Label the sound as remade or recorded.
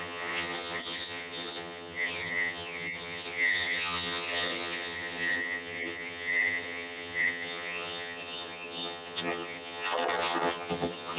remade